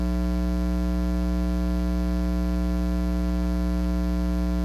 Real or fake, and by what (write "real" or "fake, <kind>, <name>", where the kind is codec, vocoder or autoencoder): real